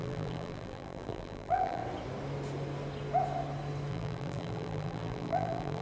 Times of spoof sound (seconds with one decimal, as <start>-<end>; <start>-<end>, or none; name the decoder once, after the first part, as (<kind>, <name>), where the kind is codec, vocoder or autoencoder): 0.0-1.8 (vocoder, BigVGAN v2); 3.9-5.8